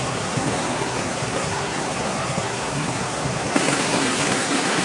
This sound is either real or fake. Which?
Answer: fake